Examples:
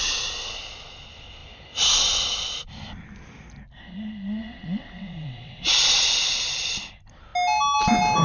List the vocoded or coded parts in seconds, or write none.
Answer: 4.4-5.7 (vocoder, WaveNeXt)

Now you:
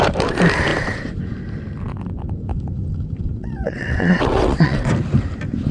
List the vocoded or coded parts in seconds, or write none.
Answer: 3.3-4.9 (vocoder, WaveNeXt)

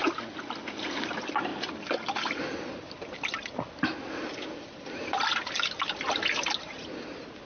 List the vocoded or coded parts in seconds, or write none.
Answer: none

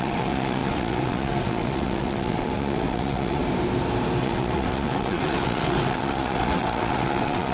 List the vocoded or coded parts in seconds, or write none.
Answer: 0.0-3.4 (vocoder, WaveNeXt); 4.2-7.5

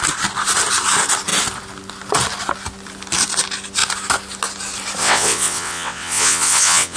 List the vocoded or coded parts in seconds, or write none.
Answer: 5.0-7.0 (vocoder, WaveNeXt)